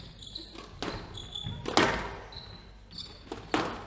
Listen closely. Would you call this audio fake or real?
real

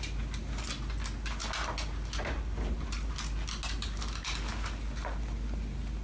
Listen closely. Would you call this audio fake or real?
real